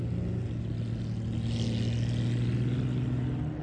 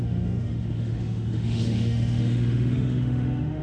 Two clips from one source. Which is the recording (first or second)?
first